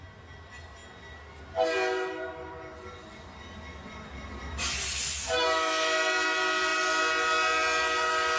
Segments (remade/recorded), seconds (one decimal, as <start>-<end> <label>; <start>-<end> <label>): 0.0-8.4 recorded

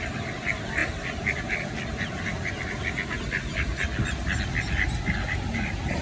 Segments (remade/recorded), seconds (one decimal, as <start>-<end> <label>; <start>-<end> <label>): 0.0-6.0 recorded

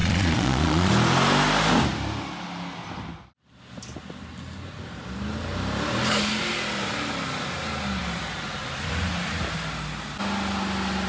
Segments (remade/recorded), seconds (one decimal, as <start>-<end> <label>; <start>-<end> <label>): 0.0-0.9 remade; 0.9-11.1 recorded

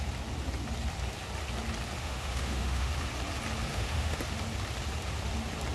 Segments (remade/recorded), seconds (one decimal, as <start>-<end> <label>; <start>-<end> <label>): 0.0-2.0 recorded; 2.0-2.9 remade; 2.9-3.7 recorded; 3.7-4.2 remade; 4.2-5.7 recorded

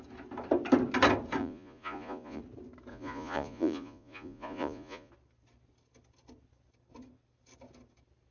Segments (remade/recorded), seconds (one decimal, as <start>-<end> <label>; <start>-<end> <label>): 0.0-1.4 recorded; 1.4-2.4 remade; 2.4-2.9 recorded; 2.9-5.1 remade; 5.1-8.3 recorded

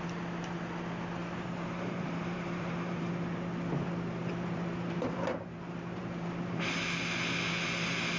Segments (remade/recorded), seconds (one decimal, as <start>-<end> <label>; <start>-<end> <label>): 0.0-1.2 recorded; 1.2-3.1 remade; 3.1-4.2 recorded; 4.2-6.6 remade; 6.6-8.2 recorded

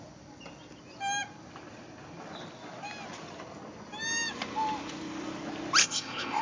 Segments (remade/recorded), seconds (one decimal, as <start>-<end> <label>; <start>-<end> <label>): 0.0-5.8 recorded; 5.8-6.4 remade